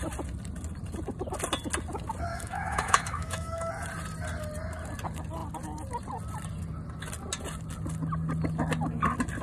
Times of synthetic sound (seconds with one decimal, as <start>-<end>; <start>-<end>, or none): 2.3-3.7